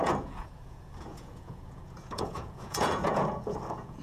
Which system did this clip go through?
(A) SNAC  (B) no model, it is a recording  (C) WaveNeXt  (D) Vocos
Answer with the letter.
D